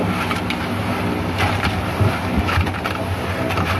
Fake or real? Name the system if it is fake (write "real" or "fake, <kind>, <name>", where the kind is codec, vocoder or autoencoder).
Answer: real